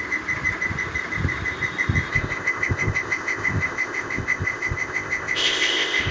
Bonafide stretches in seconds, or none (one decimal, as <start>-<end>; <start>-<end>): 0.0-2.1